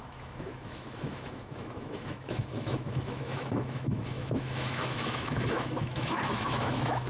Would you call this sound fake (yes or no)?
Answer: yes